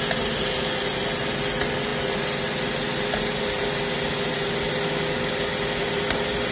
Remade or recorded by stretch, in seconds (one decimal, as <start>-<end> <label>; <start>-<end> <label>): 0.0-6.5 recorded